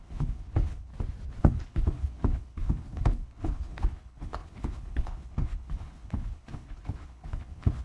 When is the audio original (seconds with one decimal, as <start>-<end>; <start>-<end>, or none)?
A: 0.9-1.4

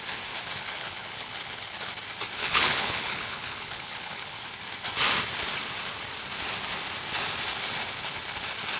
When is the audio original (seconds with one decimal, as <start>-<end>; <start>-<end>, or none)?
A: 0.0-0.6; 1.9-2.4; 4.5-8.8

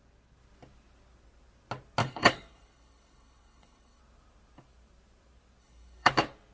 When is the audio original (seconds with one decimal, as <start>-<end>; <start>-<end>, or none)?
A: 0.0-2.0; 4.0-5.6; 6.1-6.5